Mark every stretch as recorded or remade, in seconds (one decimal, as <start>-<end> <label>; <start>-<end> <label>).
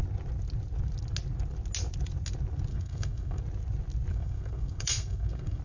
0.0-2.7 recorded; 2.7-3.4 remade; 3.4-4.1 recorded; 4.1-5.6 remade